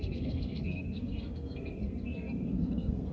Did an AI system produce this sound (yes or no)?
yes